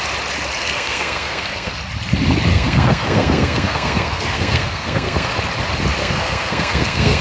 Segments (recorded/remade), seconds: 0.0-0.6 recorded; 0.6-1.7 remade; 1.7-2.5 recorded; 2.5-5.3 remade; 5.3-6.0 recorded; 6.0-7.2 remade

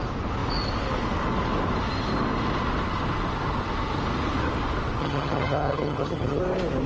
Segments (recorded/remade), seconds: 0.0-5.0 recorded; 5.0-6.4 remade; 6.4-6.9 recorded